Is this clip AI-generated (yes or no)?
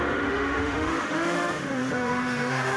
yes